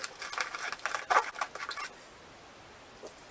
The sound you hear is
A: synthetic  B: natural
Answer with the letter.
B